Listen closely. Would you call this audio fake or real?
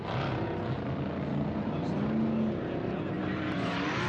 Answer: real